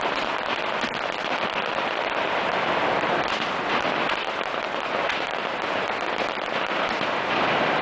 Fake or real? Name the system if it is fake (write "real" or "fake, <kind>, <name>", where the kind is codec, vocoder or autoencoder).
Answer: real